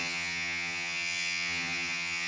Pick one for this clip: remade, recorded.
remade